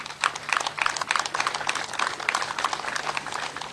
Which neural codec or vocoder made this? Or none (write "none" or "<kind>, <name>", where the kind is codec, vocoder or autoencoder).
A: none